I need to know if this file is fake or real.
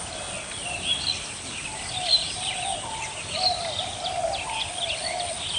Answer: real